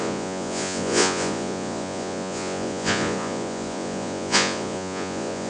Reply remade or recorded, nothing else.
remade